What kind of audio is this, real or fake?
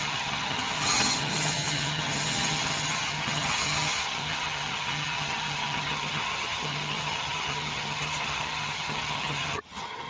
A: fake